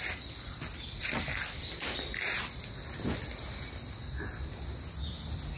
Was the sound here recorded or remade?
recorded